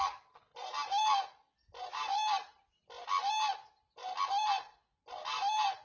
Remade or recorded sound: recorded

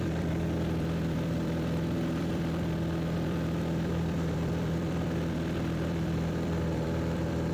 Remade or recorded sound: remade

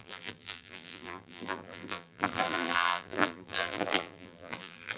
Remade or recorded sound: remade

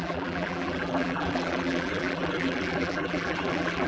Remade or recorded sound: remade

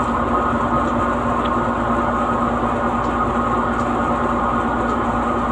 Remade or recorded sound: recorded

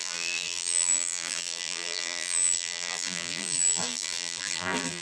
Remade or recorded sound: remade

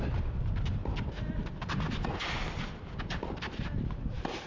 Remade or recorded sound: recorded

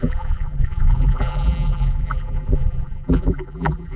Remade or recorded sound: remade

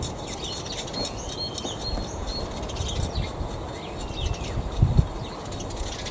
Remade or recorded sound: recorded